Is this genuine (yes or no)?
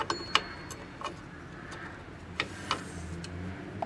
yes